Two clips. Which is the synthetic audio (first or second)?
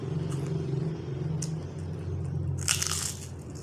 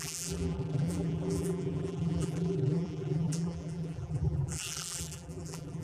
second